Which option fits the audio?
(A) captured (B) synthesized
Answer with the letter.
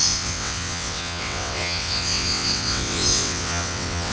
B